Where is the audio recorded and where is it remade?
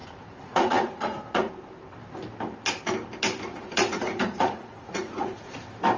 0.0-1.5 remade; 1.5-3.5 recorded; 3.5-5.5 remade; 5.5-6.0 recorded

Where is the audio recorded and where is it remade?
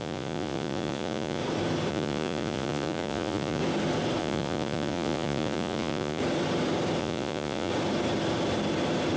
0.0-1.4 remade; 1.4-1.9 recorded; 1.9-3.6 remade; 3.6-4.2 recorded; 4.2-6.2 remade; 6.2-7.0 recorded; 7.0-7.7 remade; 7.7-9.2 recorded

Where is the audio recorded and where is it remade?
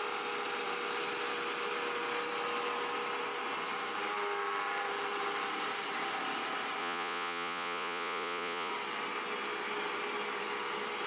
0.0-6.8 recorded; 6.8-8.7 remade; 8.7-11.1 recorded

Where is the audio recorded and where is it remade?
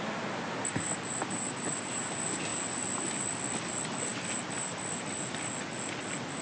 0.0-6.4 recorded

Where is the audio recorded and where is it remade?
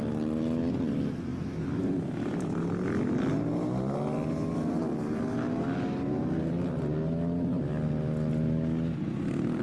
0.0-9.6 recorded